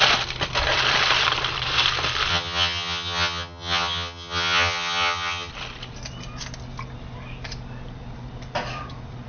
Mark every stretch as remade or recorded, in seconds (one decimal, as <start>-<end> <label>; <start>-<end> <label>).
0.0-2.3 recorded; 2.3-5.5 remade; 5.5-9.3 recorded